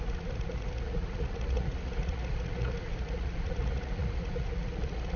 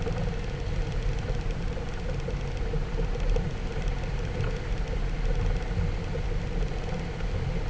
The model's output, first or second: first